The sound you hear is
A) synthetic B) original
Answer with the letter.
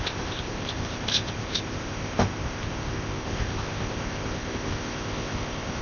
A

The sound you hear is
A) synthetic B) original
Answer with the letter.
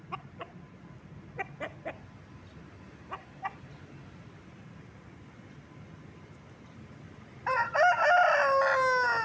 B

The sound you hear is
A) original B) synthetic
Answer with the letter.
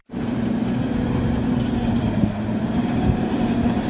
B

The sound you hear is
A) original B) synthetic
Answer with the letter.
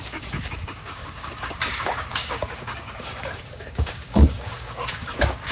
B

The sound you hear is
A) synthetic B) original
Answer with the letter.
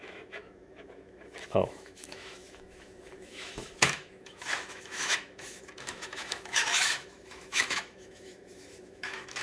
A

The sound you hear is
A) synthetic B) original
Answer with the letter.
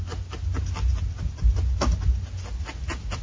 B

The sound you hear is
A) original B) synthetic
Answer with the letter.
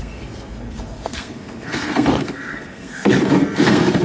B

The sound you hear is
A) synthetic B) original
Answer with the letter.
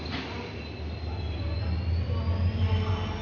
B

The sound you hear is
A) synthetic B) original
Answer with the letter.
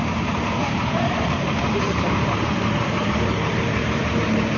A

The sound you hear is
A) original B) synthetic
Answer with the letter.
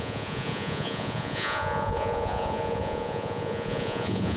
B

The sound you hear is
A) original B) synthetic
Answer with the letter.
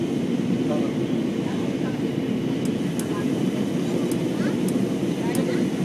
A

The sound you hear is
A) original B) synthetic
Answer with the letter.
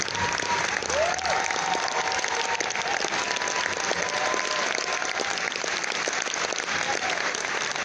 A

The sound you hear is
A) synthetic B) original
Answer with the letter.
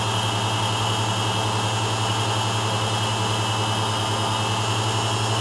B